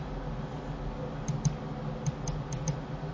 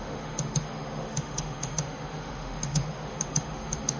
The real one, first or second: first